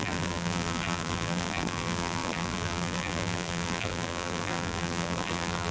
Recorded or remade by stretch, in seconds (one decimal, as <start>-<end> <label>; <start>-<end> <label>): 0.0-5.7 remade